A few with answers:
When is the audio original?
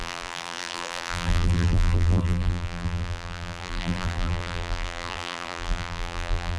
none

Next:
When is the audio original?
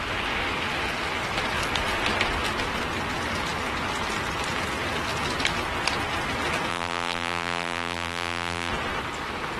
0.0-6.7; 8.7-9.6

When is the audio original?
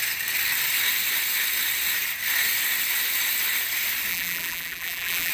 0.0-4.1